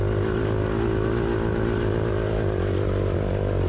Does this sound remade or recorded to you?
recorded